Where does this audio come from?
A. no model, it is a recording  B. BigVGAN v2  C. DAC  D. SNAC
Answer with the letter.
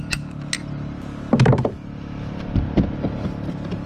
A